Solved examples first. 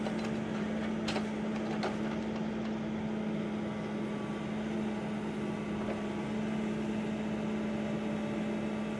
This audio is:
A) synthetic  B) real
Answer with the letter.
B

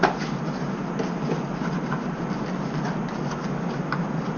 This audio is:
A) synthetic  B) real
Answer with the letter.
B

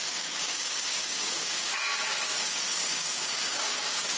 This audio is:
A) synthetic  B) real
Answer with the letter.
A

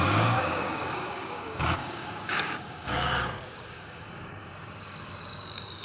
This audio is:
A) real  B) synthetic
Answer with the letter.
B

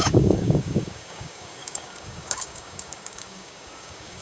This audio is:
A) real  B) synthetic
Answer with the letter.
B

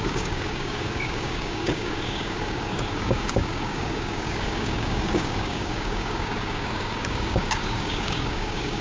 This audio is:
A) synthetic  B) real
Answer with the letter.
A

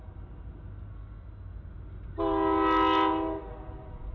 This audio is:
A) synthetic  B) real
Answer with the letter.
B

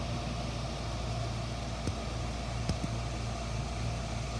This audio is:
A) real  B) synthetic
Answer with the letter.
A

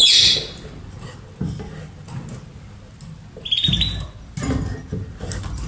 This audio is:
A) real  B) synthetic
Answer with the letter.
A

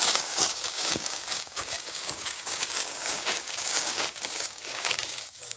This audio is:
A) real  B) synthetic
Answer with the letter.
B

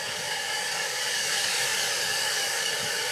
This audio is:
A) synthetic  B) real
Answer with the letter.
A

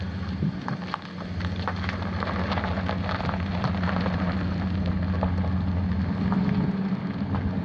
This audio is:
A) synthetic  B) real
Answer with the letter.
B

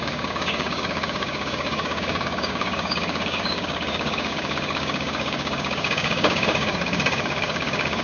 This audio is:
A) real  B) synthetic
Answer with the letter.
B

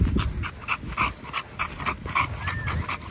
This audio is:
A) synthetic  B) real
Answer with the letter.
B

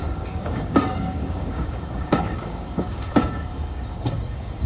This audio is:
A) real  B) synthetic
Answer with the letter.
B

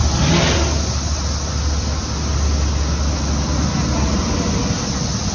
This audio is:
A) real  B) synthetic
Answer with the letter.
A